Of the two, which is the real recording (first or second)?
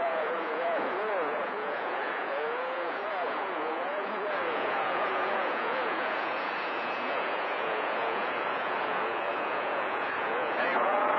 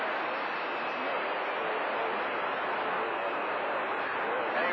second